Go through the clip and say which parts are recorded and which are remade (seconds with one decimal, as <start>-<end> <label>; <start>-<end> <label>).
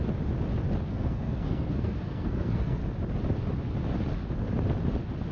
0.0-0.9 recorded; 0.9-2.8 remade; 2.8-5.3 recorded